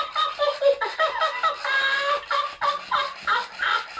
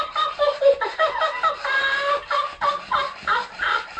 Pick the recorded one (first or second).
first